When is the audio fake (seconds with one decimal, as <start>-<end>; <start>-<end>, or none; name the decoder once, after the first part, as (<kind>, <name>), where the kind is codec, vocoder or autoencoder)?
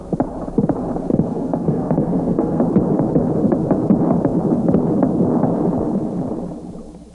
1.1-2.6 (codec, SNAC)